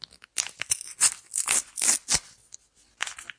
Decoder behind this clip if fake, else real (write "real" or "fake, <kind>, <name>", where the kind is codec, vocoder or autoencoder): real